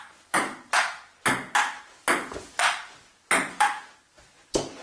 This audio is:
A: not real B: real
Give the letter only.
B